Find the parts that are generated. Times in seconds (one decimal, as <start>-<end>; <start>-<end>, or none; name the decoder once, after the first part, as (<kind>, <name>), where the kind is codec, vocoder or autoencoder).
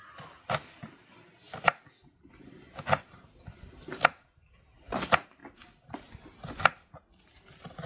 none